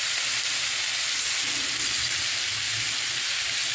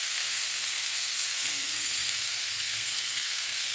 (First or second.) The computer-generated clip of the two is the second